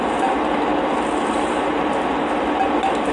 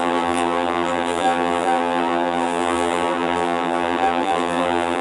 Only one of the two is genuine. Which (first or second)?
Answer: first